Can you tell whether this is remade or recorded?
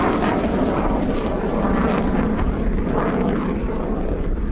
recorded